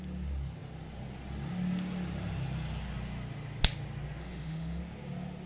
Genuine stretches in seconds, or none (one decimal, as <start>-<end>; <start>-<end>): 0.0-4.2; 4.8-5.5